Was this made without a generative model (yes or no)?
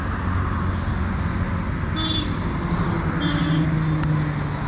yes